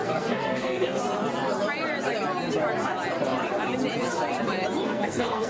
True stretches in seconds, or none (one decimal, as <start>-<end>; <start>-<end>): 1.0-4.8